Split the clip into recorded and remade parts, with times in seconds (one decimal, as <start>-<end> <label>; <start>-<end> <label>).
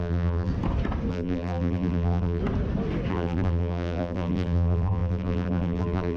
0.0-0.5 remade; 0.5-1.1 recorded; 1.1-2.4 remade; 2.4-3.1 recorded; 3.1-6.2 remade